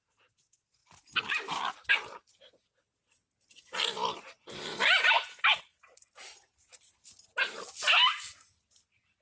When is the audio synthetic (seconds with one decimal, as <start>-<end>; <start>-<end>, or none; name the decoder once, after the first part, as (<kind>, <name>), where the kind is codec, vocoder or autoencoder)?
none